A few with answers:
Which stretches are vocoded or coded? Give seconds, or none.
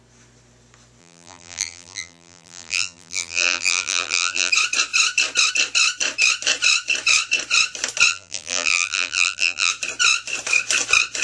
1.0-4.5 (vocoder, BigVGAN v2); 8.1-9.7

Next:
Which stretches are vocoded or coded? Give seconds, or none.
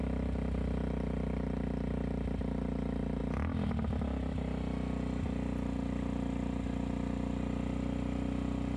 none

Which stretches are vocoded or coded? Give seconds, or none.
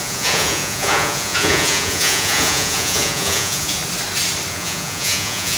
0.0-3.8 (vocoder, Vocos); 4.5-5.6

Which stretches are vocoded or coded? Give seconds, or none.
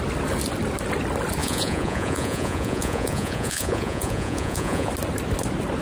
1.4-4.9 (vocoder, Vocos)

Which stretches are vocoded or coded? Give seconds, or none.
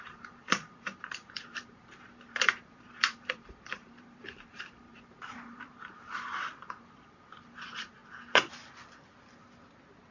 0.0-8.0 (vocoder, BigVGAN v2)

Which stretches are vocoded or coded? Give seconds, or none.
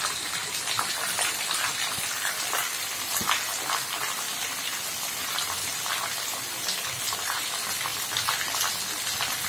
none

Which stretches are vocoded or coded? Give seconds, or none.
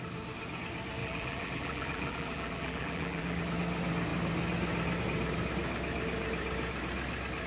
1.0-3.4 (vocoder, BigVGAN v2)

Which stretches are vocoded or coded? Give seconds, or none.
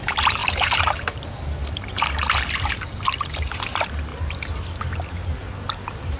0.0-4.1 (vocoder, BigVGAN v2)